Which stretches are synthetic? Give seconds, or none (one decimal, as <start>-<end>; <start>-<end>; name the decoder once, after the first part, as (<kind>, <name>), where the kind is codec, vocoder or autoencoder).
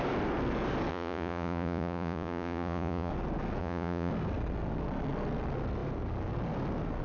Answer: 0.9-3.1 (vocoder, Vocos); 3.6-4.1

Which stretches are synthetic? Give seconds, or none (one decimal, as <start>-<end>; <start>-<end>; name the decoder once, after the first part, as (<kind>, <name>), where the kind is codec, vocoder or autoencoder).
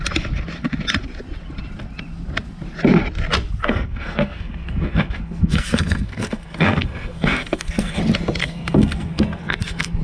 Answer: 3.6-8.0 (codec, SNAC); 8.4-10.0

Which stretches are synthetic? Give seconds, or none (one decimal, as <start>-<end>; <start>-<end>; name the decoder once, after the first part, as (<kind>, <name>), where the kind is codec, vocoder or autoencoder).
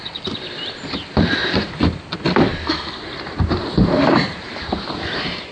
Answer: 1.4-2.0 (vocoder, BigVGAN v2); 2.5-5.5